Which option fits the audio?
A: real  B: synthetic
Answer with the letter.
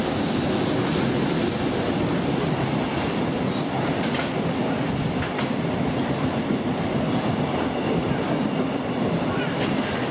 A